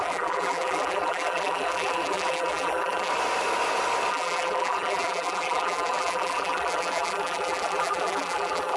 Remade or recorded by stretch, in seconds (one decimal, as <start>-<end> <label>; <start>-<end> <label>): 0.0-3.1 remade; 3.1-4.1 recorded; 4.1-8.8 remade

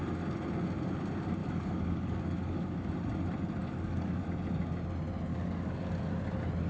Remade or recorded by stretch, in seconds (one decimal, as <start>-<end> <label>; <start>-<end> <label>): 0.0-1.4 recorded; 1.4-2.9 remade; 2.9-3.6 recorded; 3.6-4.2 remade; 4.2-5.3 recorded; 5.3-6.1 remade; 6.1-6.7 recorded

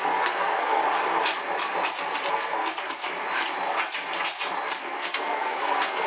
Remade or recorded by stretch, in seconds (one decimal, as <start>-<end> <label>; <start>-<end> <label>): 0.0-0.8 remade; 0.8-2.3 recorded; 2.3-2.7 remade; 2.7-4.8 recorded; 4.8-6.1 remade

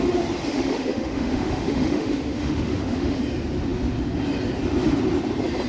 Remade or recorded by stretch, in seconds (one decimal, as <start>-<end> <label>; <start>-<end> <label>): 0.0-0.5 recorded; 0.5-3.2 remade; 3.2-5.7 recorded

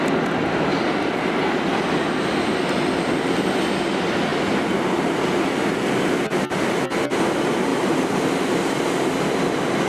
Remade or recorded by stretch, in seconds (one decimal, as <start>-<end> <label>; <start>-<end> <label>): 0.0-7.7 recorded; 7.7-8.5 remade; 8.5-9.9 recorded

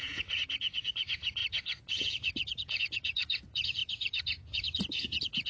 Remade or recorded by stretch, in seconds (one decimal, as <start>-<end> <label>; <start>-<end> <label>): 0.0-5.5 remade

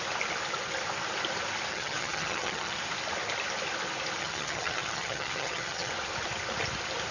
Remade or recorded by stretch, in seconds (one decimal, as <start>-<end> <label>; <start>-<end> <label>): 0.0-1.7 recorded; 1.7-2.8 remade; 2.8-4.2 recorded; 4.2-5.9 remade; 5.9-7.1 recorded

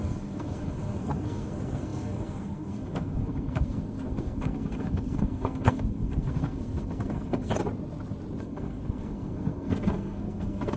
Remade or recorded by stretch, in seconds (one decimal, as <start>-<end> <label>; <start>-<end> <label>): 0.0-7.5 remade; 7.5-8.4 recorded; 8.4-10.8 remade